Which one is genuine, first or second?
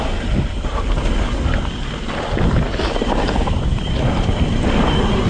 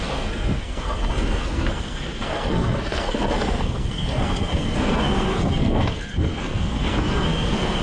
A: first